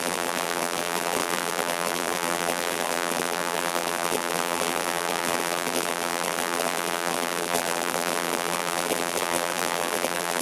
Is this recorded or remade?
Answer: remade